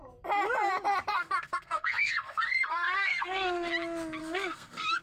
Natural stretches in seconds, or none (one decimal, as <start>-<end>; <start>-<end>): 0.0-1.1; 3.7-4.2